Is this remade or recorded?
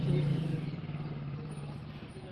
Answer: recorded